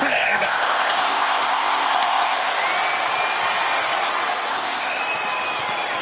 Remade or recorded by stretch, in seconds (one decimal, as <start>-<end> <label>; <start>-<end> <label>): 0.0-2.5 remade; 2.5-4.5 recorded; 4.5-5.0 remade; 5.0-6.0 recorded